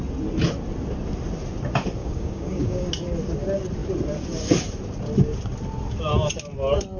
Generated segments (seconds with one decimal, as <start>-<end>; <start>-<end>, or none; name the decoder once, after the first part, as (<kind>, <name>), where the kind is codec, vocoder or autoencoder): 2.0-2.9 (codec, DAC)